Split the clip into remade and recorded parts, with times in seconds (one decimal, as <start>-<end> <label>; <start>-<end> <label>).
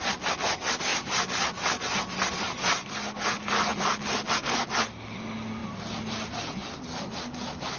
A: 0.0-7.8 recorded